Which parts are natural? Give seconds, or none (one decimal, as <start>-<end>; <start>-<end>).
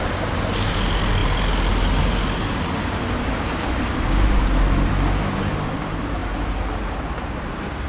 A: 0.0-7.9